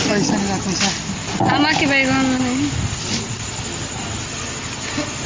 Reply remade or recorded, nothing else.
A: recorded